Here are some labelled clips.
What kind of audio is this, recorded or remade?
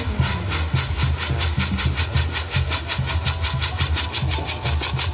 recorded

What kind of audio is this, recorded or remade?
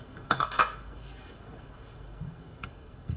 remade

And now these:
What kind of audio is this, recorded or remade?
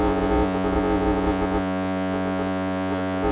remade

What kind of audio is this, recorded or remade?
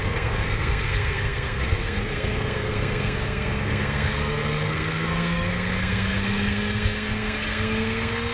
remade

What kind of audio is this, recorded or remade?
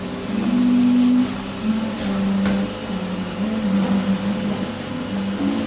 recorded